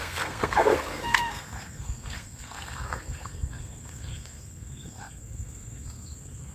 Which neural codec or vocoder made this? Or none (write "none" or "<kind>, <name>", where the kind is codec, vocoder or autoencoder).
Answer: codec, SNAC